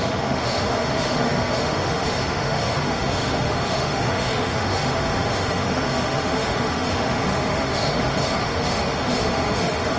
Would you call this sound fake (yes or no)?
yes